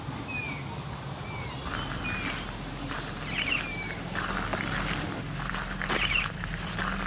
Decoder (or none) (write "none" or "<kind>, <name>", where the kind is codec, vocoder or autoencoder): none